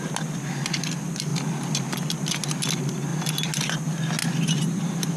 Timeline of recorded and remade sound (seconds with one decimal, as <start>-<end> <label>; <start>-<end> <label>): 0.0-5.2 recorded